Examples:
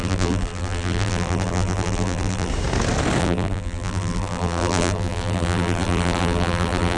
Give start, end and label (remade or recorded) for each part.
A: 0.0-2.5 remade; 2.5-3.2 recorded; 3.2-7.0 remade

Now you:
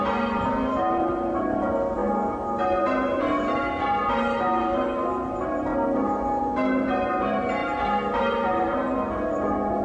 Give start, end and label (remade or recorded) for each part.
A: 0.0-9.8 remade